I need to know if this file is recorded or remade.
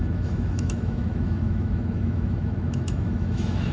remade